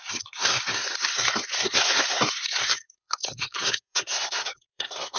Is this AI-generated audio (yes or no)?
yes